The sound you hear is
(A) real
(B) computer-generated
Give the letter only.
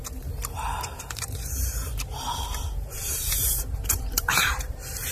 B